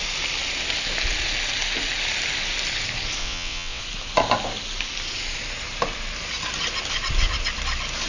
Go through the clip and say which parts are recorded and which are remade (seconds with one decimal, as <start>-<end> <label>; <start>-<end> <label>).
0.0-3.2 recorded; 3.2-3.8 remade; 3.8-8.1 recorded